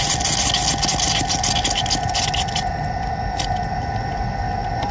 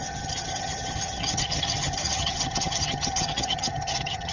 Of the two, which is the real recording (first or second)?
first